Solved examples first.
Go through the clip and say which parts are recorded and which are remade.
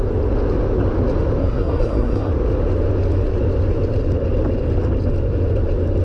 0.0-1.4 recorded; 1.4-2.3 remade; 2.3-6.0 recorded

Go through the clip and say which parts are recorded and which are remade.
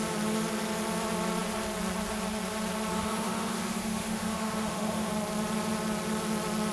0.0-2.9 recorded; 2.9-5.1 remade; 5.1-6.7 recorded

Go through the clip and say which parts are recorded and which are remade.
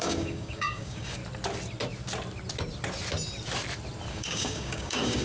0.0-1.2 remade; 1.2-4.1 recorded; 4.1-5.2 remade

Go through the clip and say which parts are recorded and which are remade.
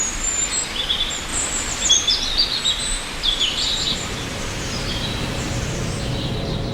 0.0-1.3 recorded; 1.3-1.9 remade; 1.9-2.8 recorded; 2.8-6.3 remade; 6.3-6.7 recorded